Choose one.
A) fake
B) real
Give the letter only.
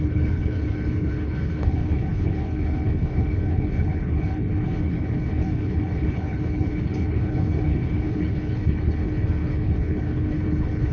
A